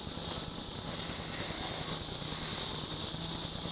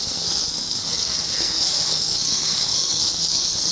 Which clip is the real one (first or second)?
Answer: first